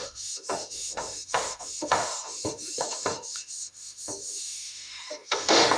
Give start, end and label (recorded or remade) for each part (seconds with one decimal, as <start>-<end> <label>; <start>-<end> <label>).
0.0-5.8 remade